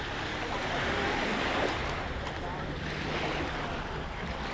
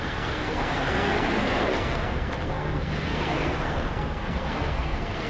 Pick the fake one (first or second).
second